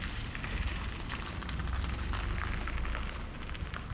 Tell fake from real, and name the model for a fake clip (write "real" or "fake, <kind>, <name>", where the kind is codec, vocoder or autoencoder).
real